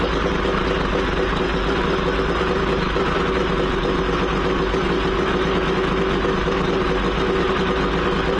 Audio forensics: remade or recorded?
recorded